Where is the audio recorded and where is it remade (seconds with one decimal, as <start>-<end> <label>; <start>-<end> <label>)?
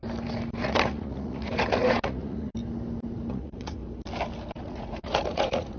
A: 0.0-0.6 recorded; 0.6-2.5 remade; 2.5-3.3 recorded; 3.3-3.8 remade; 3.8-4.6 recorded; 4.6-5.8 remade